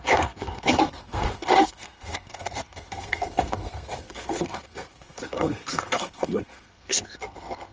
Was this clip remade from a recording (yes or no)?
yes